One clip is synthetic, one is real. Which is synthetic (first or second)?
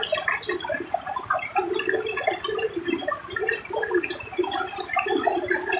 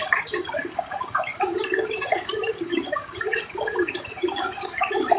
second